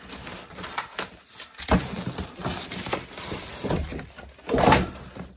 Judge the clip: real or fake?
real